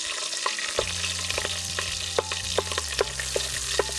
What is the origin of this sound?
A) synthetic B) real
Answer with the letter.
B